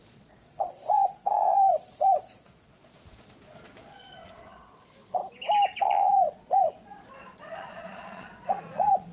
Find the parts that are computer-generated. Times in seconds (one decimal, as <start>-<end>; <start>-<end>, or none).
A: 0.0-5.2; 5.8-9.1